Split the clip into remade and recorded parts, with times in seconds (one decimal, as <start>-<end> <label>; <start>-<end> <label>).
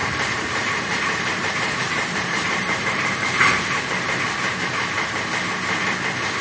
0.0-3.8 remade; 3.8-6.4 recorded